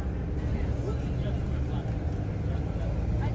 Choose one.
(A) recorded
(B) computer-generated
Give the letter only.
A